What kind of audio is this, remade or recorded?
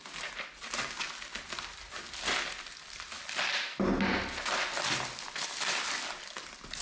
recorded